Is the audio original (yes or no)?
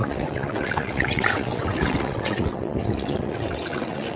no